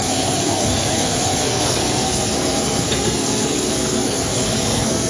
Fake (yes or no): yes